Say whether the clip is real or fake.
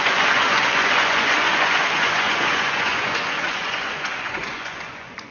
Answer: fake